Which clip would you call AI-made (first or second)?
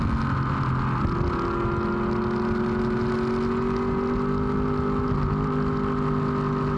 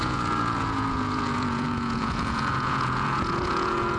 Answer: second